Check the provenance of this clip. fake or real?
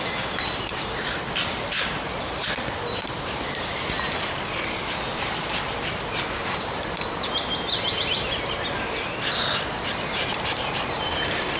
real